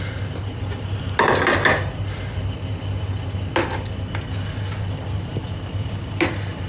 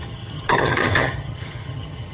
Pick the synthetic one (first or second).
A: second